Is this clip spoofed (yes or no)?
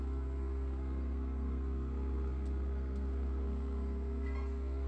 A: yes